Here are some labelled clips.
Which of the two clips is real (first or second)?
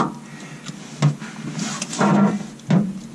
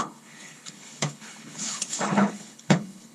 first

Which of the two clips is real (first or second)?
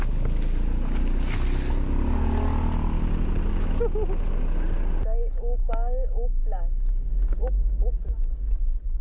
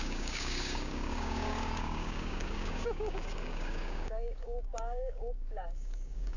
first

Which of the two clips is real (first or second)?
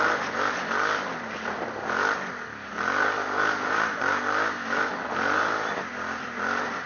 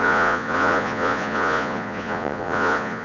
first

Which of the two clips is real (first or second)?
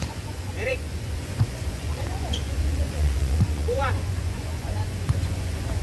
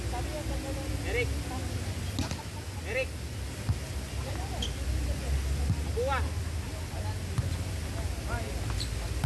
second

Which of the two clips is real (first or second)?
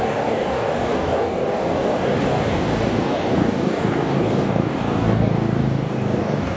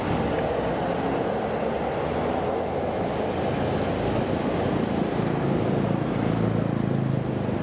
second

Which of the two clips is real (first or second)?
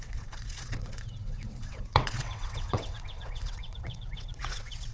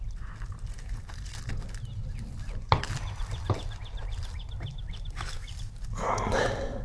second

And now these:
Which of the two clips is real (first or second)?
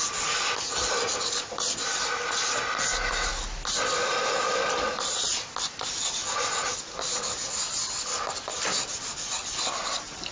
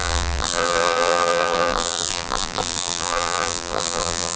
first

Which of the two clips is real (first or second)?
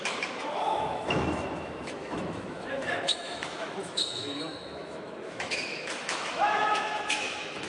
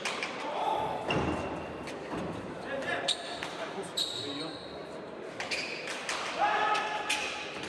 second